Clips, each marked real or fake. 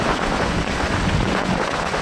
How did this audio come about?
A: fake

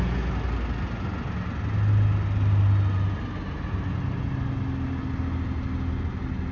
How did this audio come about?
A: real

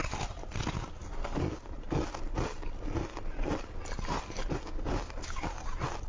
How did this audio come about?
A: real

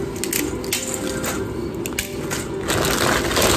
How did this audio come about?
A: real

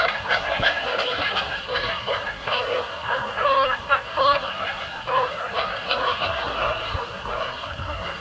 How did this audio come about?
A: fake